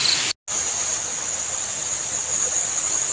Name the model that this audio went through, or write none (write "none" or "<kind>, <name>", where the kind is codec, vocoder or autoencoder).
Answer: none